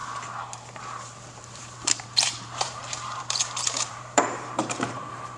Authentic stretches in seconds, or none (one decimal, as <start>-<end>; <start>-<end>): 0.0-1.4